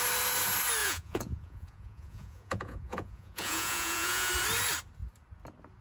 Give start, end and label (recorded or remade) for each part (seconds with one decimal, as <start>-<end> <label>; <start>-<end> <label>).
0.0-0.8 recorded; 0.8-4.3 remade; 4.3-5.8 recorded